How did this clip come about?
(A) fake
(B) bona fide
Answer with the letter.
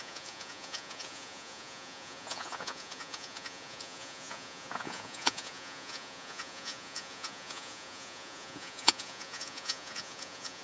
A